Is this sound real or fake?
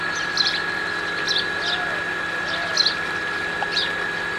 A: fake